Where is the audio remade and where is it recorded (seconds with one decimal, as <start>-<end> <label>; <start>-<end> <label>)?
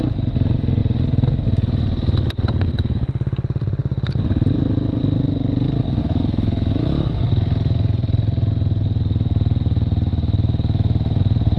0.0-6.0 recorded; 6.0-7.2 remade; 7.2-10.1 recorded; 10.1-11.2 remade; 11.2-11.6 recorded